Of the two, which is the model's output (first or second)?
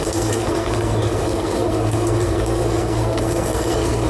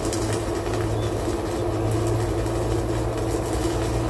first